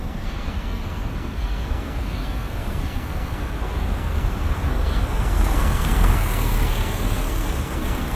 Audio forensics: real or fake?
fake